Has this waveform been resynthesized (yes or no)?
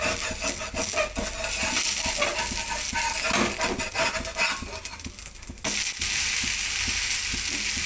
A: no